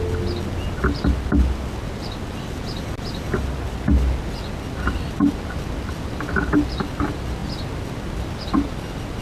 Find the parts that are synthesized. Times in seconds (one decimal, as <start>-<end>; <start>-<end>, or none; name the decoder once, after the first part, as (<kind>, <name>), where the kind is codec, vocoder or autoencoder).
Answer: none